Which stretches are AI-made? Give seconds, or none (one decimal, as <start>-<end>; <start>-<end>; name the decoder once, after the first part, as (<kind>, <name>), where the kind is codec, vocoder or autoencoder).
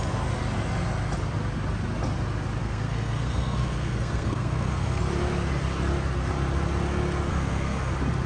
2.6-5.0 (codec, SNAC); 7.3-7.9